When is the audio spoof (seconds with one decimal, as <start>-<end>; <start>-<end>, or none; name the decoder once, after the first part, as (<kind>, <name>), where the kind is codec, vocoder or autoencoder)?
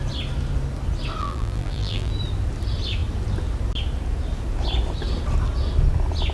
1.2-2.1 (vocoder, BigVGAN v2)